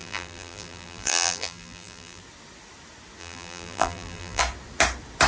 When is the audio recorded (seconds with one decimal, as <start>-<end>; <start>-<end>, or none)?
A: 2.2-3.2; 4.4-5.3